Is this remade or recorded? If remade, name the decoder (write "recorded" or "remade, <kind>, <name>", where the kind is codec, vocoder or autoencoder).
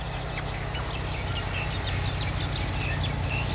recorded